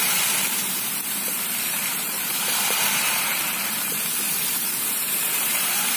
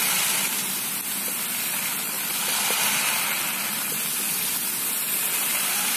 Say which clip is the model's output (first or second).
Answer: first